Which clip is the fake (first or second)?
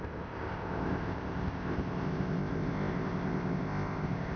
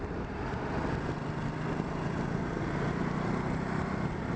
first